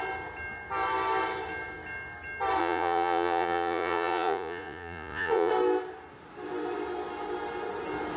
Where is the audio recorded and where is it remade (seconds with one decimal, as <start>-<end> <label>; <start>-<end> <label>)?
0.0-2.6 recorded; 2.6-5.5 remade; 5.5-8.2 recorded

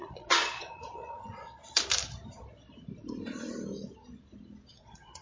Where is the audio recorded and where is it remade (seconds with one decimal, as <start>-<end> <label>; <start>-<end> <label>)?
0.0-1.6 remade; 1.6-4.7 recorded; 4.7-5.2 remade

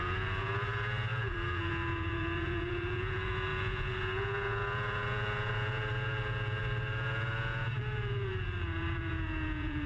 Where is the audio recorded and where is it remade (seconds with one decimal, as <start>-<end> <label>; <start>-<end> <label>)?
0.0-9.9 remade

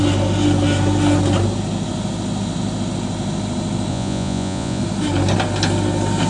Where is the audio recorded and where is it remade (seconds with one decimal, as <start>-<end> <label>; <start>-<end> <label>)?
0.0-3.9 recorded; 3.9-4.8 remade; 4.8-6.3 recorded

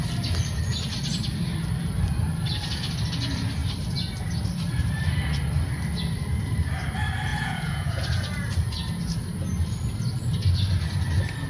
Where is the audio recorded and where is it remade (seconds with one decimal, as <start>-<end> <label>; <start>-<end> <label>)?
0.0-7.3 recorded; 7.3-8.0 remade; 8.0-11.5 recorded

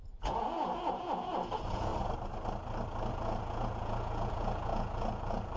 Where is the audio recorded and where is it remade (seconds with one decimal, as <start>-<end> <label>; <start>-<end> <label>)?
0.0-1.9 remade; 1.9-3.1 recorded; 3.1-5.6 remade